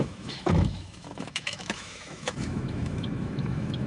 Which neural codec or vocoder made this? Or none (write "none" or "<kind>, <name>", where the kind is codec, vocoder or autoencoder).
autoencoder, DAC-VAE